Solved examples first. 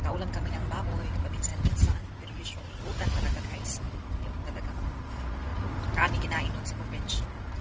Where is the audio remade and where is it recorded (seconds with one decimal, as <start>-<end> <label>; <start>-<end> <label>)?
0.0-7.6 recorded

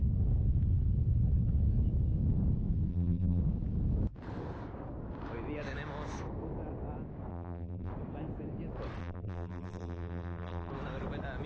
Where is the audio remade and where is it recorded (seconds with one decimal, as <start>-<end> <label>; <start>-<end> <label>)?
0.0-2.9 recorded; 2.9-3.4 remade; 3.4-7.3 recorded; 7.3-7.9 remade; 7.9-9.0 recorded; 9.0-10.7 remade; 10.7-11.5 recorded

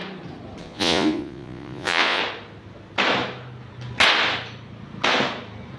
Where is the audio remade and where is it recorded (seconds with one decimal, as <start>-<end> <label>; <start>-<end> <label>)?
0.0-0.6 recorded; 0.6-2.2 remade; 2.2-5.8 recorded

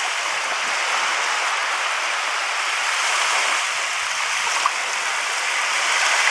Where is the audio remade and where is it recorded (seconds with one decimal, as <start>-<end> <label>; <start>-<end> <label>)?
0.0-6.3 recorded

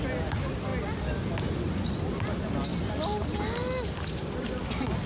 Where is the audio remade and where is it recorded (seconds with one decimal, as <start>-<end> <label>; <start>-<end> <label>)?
0.0-5.1 recorded

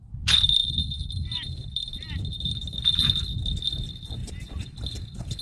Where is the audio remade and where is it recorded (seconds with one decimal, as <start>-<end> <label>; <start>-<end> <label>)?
0.0-4.2 recorded; 4.2-4.7 remade; 4.7-5.4 recorded